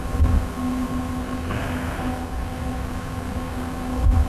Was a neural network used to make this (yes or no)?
yes